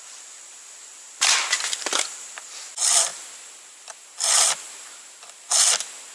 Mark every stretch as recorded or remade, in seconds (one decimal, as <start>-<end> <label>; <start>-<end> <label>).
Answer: 0.0-6.1 recorded